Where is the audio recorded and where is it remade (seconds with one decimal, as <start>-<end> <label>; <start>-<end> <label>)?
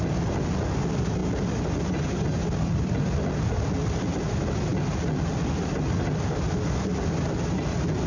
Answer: 0.0-8.1 recorded